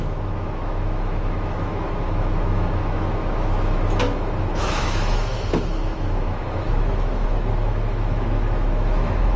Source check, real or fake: fake